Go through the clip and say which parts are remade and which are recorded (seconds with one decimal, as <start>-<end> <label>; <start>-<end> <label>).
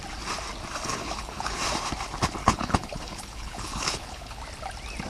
0.0-0.9 recorded; 0.9-1.6 remade; 1.6-2.4 recorded; 2.4-4.4 remade; 4.4-5.1 recorded